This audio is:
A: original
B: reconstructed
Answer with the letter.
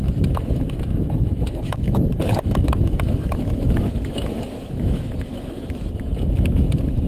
B